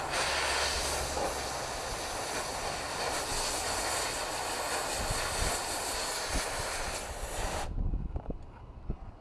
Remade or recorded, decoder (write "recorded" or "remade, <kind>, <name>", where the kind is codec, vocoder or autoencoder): recorded